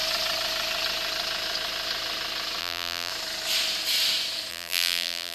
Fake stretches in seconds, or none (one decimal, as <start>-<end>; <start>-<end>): 2.6-3.1; 4.5-5.3